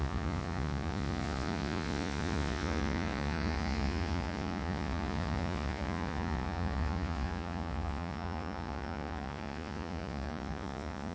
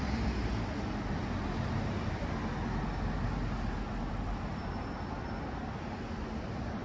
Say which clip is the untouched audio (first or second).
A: second